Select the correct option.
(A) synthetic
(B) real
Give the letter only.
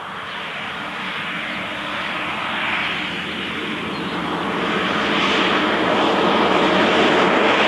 B